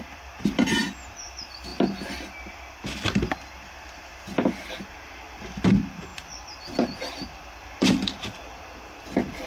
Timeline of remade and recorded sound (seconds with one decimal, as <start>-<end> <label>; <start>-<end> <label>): 0.0-9.5 recorded